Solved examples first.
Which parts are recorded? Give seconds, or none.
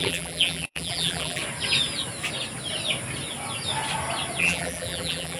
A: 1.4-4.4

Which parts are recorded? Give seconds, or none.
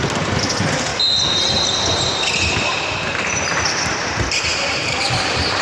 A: 0.9-3.8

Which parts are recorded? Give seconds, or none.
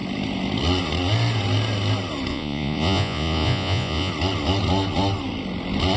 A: 0.0-2.3; 4.1-6.0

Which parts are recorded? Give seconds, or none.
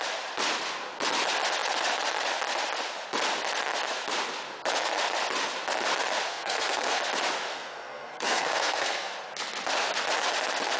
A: 0.0-6.3; 7.0-7.5; 9.1-10.8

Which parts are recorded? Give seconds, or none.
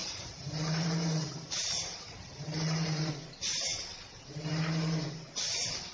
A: 3.1-5.9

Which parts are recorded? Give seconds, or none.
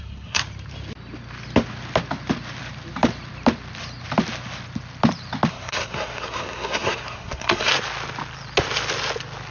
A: 0.4-5.5; 7.7-9.5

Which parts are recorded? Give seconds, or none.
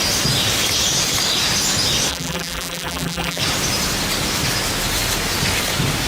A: 0.0-2.1; 3.4-6.1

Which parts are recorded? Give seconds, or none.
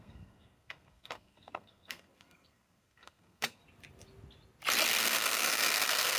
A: 3.6-5.0